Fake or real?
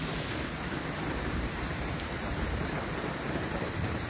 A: fake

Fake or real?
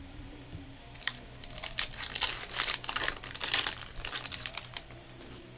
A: fake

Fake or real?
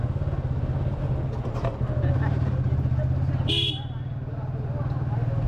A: real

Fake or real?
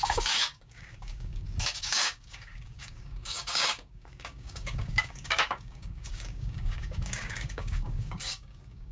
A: fake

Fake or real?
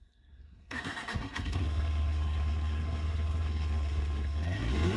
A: fake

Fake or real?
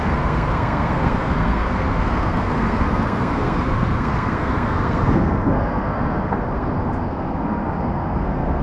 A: fake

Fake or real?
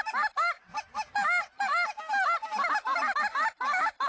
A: real